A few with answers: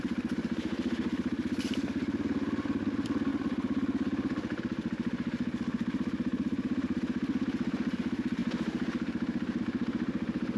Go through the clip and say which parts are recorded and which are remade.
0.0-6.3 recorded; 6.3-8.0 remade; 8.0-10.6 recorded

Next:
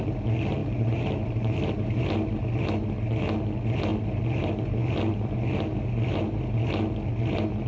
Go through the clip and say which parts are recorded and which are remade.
0.0-0.6 recorded; 0.6-1.9 remade; 1.9-7.7 recorded

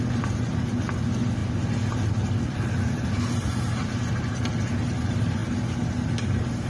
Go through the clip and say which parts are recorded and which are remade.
0.0-6.7 recorded

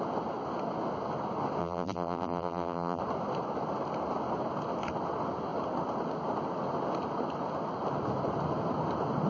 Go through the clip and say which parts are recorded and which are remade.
0.0-1.6 recorded; 1.6-3.0 remade; 3.0-9.3 recorded

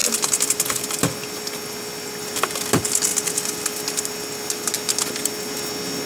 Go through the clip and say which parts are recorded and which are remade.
0.0-6.1 recorded

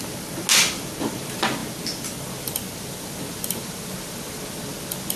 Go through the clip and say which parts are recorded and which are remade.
0.0-5.2 recorded